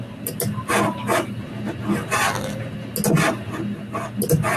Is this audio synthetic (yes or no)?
no